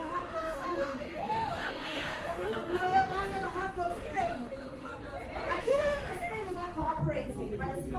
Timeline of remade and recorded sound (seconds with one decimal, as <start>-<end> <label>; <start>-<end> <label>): 0.0-4.9 remade; 4.9-5.6 recorded; 5.6-7.0 remade; 7.0-8.0 recorded